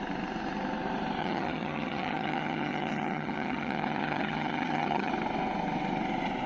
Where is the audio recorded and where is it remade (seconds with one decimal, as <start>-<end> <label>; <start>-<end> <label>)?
0.0-1.2 recorded; 1.2-5.1 remade; 5.1-6.5 recorded